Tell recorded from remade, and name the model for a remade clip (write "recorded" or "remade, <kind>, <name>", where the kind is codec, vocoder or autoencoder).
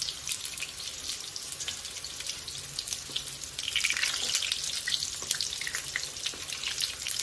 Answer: recorded